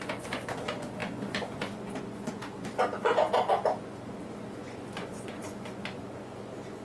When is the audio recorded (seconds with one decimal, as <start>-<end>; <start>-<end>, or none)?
none